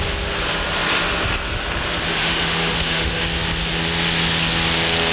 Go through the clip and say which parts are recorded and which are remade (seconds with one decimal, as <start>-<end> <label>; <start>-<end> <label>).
0.0-2.2 recorded; 2.2-3.2 remade; 3.2-5.1 recorded